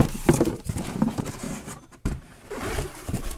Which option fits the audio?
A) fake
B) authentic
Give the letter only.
A